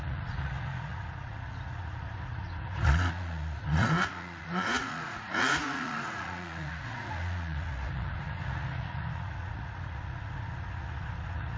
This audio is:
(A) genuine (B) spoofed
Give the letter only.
B